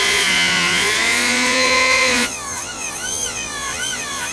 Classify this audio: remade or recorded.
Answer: remade